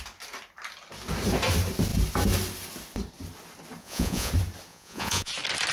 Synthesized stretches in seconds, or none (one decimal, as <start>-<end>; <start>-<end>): 3.8-4.3; 4.7-5.3